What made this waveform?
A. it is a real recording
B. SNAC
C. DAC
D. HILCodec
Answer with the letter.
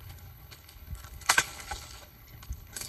D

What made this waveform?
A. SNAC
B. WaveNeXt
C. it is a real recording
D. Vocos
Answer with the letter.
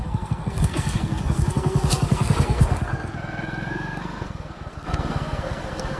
A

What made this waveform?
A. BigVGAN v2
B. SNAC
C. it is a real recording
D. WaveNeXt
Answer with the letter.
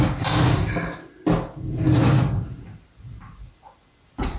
C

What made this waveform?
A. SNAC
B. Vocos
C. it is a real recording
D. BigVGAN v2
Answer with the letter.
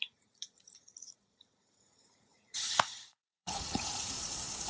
B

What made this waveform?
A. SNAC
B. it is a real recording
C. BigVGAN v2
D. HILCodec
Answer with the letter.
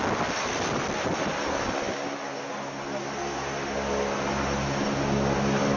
B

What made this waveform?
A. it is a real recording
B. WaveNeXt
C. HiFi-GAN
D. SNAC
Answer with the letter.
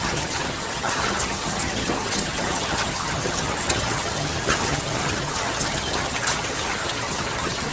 C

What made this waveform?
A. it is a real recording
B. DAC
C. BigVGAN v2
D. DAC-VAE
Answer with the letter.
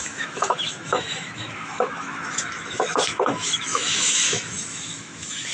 D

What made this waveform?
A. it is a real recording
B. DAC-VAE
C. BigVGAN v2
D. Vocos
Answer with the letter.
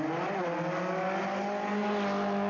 A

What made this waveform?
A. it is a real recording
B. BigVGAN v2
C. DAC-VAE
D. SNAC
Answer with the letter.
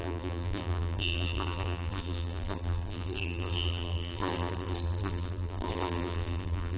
B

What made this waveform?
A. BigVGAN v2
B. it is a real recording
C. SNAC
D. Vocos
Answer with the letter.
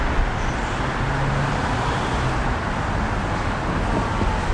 B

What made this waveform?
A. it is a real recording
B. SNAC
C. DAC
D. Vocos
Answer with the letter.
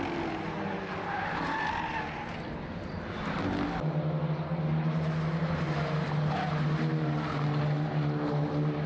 A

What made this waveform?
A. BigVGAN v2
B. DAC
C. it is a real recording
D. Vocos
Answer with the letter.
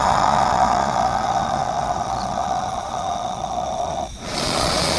D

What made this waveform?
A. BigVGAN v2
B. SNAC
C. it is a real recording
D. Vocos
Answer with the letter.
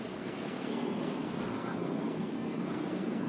B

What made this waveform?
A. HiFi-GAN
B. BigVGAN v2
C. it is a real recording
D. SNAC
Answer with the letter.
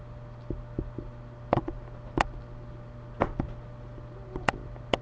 C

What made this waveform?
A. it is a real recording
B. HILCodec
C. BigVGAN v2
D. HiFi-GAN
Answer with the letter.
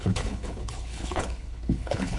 B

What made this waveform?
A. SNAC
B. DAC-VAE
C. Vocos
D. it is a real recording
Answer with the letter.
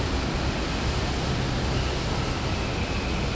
D